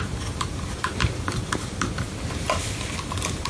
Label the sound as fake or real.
real